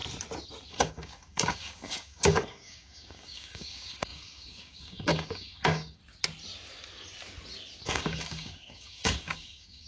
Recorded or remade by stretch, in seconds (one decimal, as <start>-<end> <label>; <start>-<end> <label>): 0.0-0.7 recorded; 0.7-6.0 remade; 6.0-7.9 recorded; 7.9-9.9 remade